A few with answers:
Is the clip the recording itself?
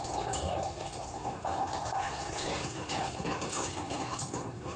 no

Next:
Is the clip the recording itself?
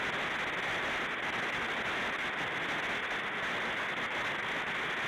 yes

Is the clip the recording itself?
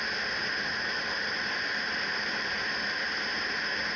yes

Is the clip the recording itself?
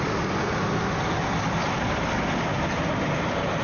no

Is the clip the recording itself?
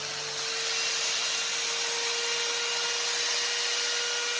yes